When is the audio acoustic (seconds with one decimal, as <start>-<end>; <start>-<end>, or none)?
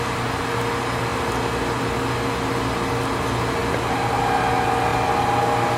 0.0-5.8